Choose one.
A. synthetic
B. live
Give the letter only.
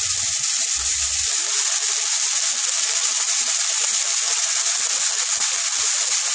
B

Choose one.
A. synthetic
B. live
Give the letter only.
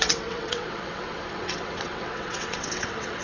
A